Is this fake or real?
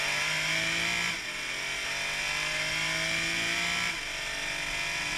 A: real